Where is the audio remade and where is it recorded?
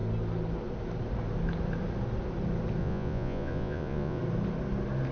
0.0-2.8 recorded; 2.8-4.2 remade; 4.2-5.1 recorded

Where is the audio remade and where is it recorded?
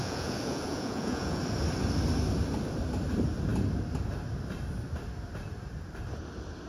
0.0-1.4 remade; 1.4-6.7 recorded